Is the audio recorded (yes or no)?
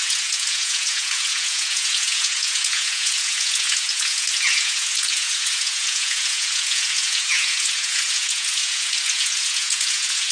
no